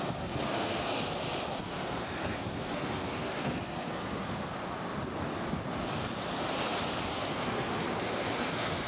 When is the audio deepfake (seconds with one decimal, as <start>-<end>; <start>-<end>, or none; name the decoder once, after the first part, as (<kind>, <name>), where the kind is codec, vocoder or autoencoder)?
0.0-1.1 (codec, SNAC); 1.6-4.5; 7.1-7.7; 8.4-8.9